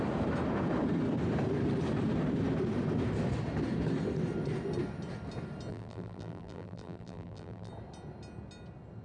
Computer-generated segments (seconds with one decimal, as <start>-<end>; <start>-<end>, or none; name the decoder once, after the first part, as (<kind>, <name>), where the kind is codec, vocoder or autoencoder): 5.7-7.7 (vocoder, BigVGAN v2)